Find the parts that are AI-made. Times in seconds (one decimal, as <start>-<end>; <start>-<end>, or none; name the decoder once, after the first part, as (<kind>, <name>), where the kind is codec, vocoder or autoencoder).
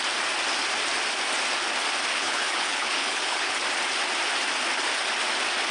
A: 2.1-3.5 (codec, HILCodec)